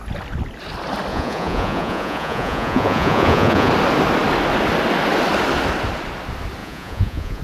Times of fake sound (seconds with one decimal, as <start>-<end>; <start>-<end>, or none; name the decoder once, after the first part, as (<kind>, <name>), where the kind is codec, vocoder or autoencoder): 1.1-3.7 (vocoder, Vocos); 6.6-7.4